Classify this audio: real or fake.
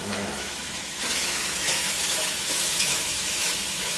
fake